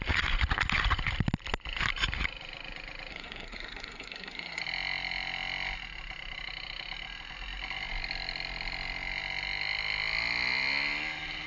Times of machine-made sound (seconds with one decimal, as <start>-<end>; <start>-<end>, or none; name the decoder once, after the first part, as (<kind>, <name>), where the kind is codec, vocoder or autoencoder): 3.1-4.6 (codec, SNAC)